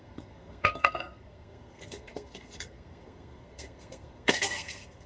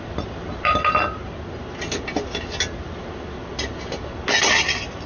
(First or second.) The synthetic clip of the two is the first